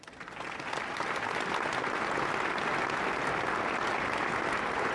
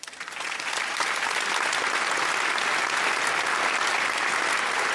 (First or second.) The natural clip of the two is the first